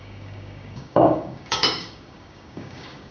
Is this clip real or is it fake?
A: fake